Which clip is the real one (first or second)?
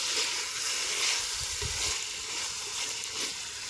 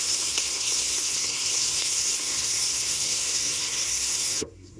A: first